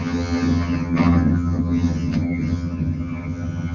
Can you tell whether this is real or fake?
fake